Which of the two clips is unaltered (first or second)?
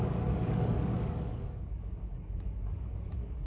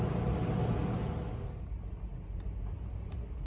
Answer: second